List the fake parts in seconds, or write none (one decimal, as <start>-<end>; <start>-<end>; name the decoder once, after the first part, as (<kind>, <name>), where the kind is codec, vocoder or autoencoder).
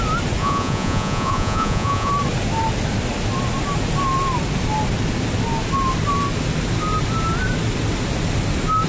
0.4-2.1 (vocoder, Vocos)